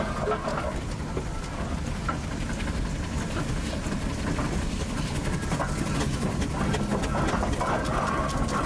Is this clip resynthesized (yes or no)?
no